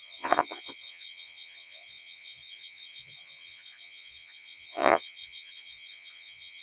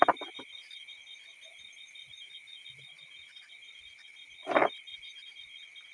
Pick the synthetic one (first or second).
first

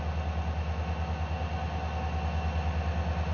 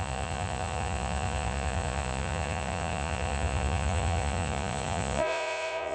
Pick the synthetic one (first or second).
second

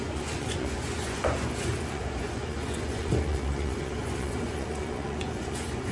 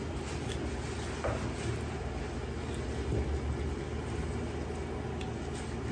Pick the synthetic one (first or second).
first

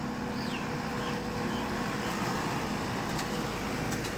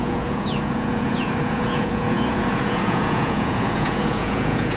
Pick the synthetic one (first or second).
second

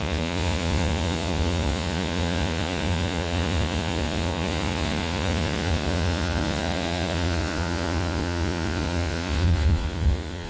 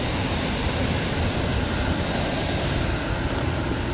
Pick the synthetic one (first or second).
first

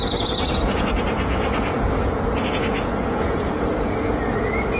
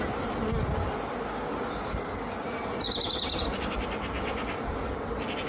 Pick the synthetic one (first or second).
first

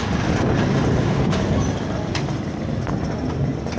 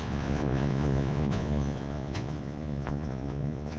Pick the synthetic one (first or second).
second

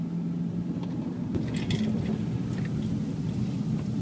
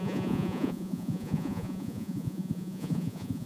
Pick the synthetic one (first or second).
second